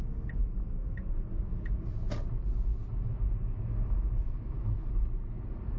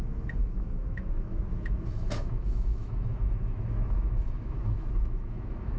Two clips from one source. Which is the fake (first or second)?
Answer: second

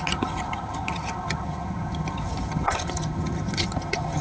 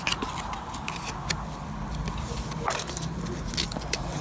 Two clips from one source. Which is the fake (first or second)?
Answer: first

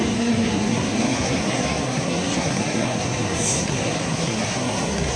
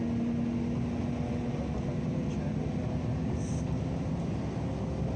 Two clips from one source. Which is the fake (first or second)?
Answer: first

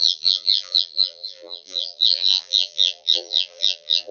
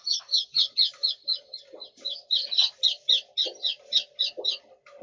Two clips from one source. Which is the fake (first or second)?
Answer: first